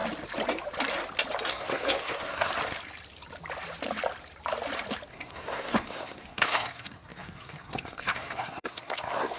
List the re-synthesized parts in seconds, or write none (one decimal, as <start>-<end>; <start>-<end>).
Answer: 1.5-2.5; 5.1-9.4